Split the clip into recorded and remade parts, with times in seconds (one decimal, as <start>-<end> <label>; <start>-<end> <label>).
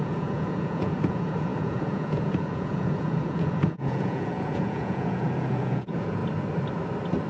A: 0.0-6.2 remade; 6.2-7.3 recorded